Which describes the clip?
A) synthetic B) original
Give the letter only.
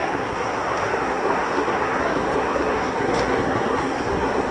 A